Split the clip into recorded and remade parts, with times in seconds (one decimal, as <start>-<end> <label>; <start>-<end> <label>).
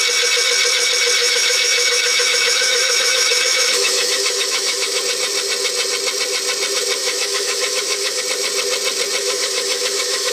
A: 0.0-1.2 recorded; 1.2-5.0 remade; 5.0-7.0 recorded; 7.0-8.2 remade; 8.2-9.2 recorded; 9.2-10.3 remade